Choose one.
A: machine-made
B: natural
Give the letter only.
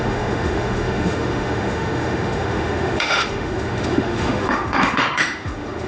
A